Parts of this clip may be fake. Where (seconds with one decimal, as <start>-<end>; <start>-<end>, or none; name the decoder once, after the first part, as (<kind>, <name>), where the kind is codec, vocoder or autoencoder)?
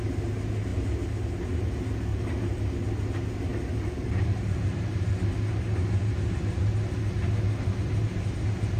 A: 2.1-2.6 (vocoder, BigVGAN v2); 3.5-5.2